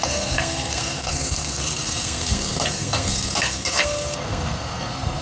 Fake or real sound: fake